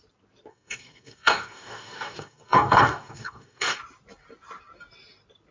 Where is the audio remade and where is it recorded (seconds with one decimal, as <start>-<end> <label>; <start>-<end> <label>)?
0.0-0.5 recorded; 0.5-3.8 remade; 3.8-5.5 recorded